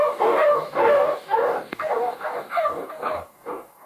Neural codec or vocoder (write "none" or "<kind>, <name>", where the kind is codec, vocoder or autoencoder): codec, DAC